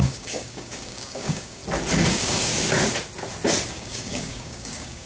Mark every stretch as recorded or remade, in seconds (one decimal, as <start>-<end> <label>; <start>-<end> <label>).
0.0-1.6 remade; 1.6-2.1 recorded; 2.1-2.5 remade; 2.5-3.7 recorded; 3.7-5.1 remade